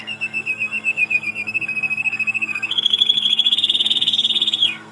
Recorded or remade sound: remade